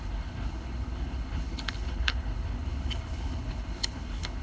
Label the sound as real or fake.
fake